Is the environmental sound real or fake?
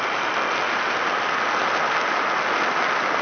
real